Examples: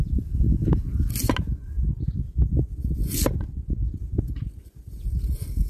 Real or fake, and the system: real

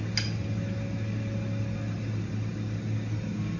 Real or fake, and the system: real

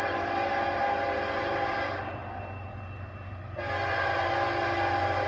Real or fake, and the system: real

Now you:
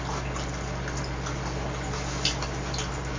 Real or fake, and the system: real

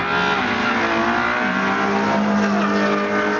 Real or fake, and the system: real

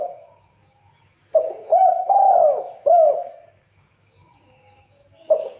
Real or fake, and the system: fake, codec, DAC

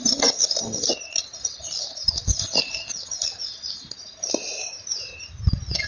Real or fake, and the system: real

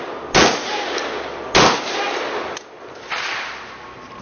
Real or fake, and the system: real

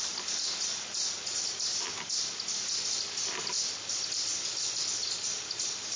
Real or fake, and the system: real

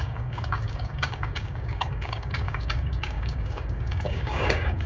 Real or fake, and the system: fake, codec, DAC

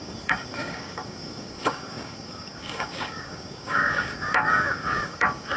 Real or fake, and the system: fake, codec, DAC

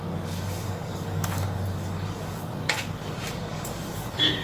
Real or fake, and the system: fake, codec, DAC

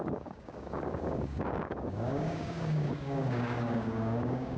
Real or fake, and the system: fake, codec, DAC